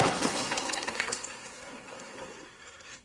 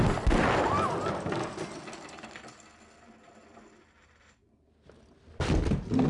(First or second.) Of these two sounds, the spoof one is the first